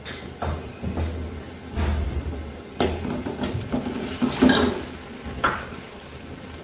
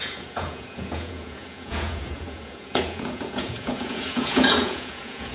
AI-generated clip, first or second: second